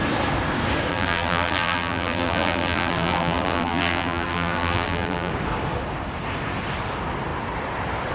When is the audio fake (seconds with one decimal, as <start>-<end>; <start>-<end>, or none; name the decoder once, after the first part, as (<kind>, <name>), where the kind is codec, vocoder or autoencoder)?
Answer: 0.9-5.3 (vocoder, BigVGAN v2)

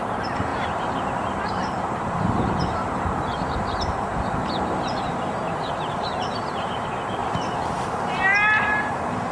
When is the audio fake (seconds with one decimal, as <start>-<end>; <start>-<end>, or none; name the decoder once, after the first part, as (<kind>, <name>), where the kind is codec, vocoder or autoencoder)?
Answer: 0.0-7.2 (vocoder, BigVGAN v2); 7.7-9.3